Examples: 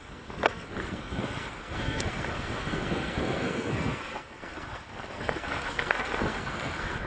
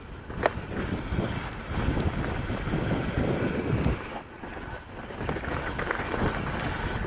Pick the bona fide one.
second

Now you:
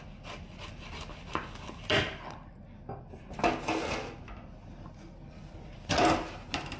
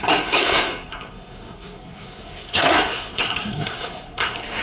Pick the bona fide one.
first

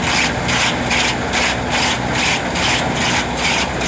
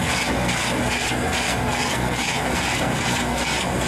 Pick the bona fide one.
first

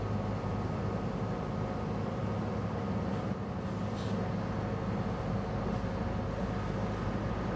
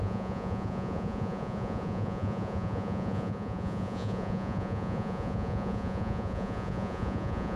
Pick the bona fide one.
first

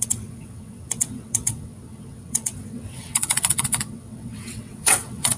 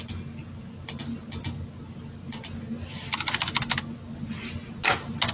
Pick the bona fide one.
second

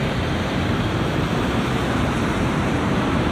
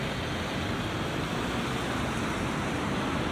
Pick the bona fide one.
second